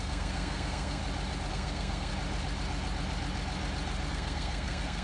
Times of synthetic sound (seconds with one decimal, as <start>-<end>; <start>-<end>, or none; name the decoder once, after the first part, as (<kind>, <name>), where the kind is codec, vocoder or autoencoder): 0.0-1.0 (codec, SNAC); 1.5-2.1; 4.1-5.0